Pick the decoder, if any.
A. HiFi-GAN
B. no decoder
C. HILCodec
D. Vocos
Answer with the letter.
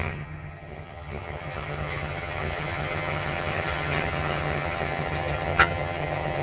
A